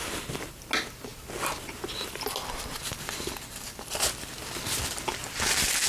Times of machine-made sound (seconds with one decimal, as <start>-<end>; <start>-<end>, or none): none

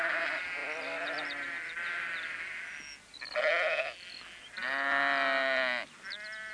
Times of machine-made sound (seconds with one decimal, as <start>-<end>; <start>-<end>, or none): none